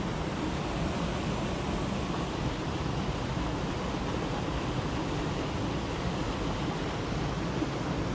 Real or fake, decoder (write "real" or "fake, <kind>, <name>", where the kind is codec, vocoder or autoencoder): real